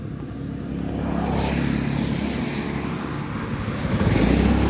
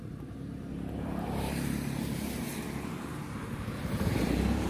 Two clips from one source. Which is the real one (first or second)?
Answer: first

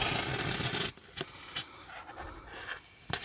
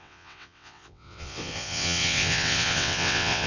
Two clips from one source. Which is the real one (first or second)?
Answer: first